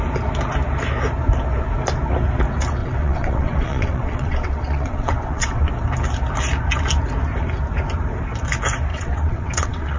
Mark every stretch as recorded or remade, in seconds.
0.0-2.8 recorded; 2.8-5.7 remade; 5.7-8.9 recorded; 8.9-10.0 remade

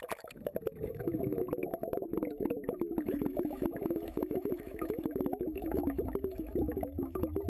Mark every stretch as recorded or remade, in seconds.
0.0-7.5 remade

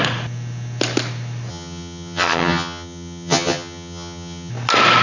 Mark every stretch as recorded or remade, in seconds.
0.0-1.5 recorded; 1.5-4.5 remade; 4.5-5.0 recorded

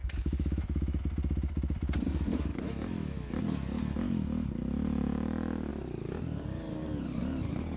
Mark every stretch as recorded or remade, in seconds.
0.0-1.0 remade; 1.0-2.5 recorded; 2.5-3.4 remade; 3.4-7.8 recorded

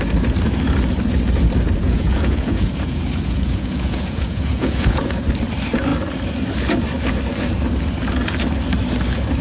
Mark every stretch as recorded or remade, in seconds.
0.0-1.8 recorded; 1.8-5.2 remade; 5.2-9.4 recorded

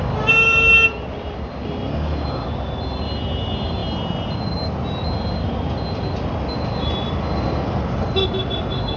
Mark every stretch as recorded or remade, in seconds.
0.0-9.0 recorded

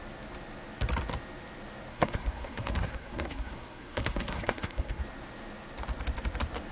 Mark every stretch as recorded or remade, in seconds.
0.0-1.9 recorded; 1.9-5.0 remade; 5.0-6.7 recorded